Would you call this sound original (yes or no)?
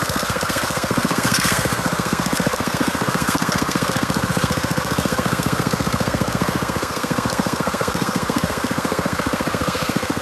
no